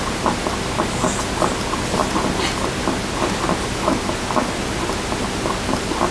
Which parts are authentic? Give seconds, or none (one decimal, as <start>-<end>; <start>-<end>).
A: 0.0-6.1